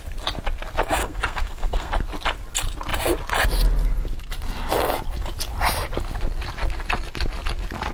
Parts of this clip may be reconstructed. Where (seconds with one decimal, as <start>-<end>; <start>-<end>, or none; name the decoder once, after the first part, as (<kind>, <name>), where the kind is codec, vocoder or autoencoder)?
1.0-1.9 (codec, SNAC)